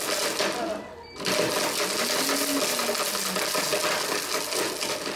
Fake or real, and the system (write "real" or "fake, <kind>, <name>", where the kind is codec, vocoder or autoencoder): real